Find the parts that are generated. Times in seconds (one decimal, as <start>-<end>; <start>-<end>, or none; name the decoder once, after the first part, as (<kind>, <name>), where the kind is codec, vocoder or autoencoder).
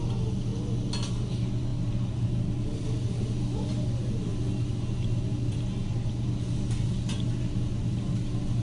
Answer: none